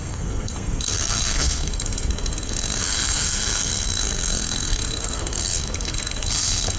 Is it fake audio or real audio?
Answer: fake